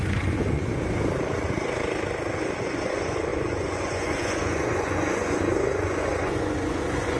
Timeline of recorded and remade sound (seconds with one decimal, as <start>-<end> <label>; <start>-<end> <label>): 0.0-0.7 remade; 0.7-2.6 recorded; 2.6-7.2 remade

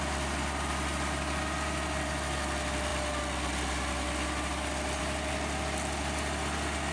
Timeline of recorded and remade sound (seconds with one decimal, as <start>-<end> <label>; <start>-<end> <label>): 0.0-6.9 recorded

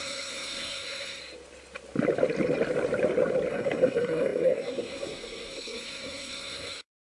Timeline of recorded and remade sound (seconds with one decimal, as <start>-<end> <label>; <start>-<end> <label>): 0.0-1.2 remade; 1.2-3.5 recorded; 3.5-7.1 remade

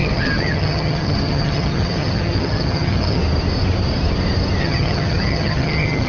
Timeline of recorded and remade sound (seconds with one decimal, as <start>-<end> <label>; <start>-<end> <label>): 0.0-3.2 remade; 3.2-4.6 recorded; 4.6-6.1 remade

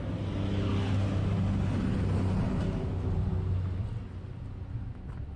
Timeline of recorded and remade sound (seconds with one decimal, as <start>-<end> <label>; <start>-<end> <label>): 0.0-5.4 recorded

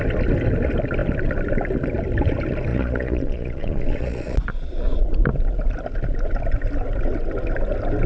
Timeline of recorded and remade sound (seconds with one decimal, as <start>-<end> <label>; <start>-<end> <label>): 0.0-2.7 recorded; 2.7-5.2 remade; 5.2-8.1 recorded

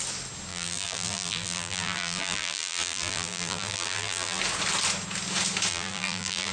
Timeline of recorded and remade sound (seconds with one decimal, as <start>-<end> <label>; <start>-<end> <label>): 0.0-0.5 recorded; 0.5-4.4 remade; 4.4-5.7 recorded; 5.7-6.5 remade